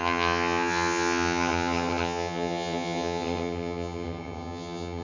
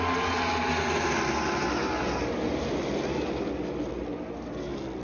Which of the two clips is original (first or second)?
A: second